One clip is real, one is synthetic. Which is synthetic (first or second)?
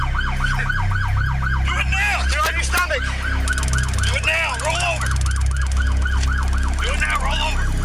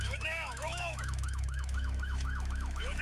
second